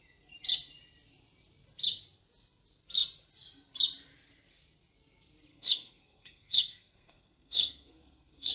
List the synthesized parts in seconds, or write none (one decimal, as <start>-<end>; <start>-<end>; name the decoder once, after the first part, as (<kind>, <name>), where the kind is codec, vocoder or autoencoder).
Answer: 5.5-8.5 (codec, SNAC)